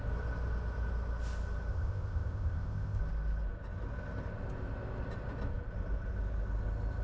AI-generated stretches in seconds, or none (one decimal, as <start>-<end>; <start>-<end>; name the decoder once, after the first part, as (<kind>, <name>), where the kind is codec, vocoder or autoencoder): 1.7-3.0 (codec, ZipCodec)